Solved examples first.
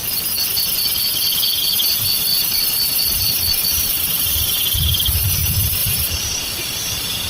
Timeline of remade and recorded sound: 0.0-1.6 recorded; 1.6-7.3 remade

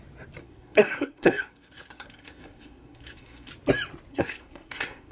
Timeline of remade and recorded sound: 0.0-0.4 recorded; 0.4-3.5 remade; 3.5-4.1 recorded; 4.1-5.1 remade

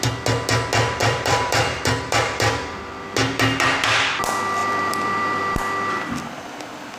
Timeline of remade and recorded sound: 0.0-1.0 recorded; 1.0-2.8 remade; 2.8-4.6 recorded; 4.6-5.4 remade; 5.4-7.0 recorded

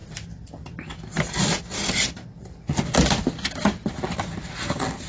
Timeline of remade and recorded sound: 0.0-5.1 recorded